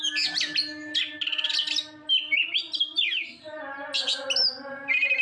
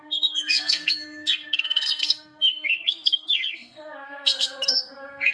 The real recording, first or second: first